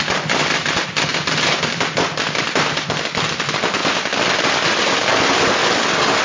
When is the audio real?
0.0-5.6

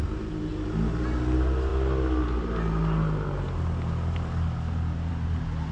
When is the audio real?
0.0-5.7

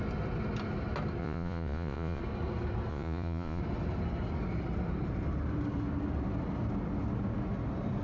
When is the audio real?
0.0-1.2; 2.2-2.9; 3.6-8.0

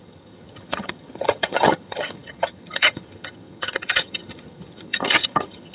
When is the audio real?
none